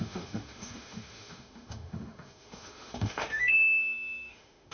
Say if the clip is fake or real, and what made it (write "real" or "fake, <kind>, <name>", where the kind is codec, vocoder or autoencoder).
fake, autoencoder, DAC-VAE